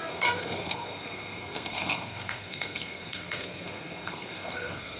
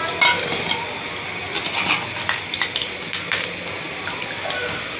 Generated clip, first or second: first